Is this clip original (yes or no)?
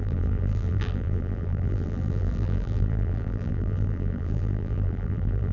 no